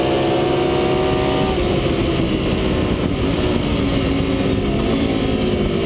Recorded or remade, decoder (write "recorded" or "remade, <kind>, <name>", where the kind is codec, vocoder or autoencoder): recorded